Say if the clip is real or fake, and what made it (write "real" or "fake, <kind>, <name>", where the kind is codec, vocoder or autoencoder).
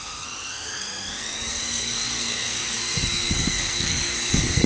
fake, codec, SNAC